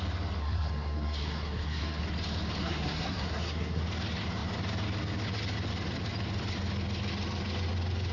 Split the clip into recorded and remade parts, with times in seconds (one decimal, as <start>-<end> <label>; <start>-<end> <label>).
0.0-0.4 recorded; 0.4-2.0 remade; 2.0-2.6 recorded; 2.6-3.8 remade; 3.8-8.1 recorded